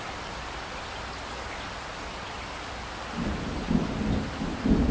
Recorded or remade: recorded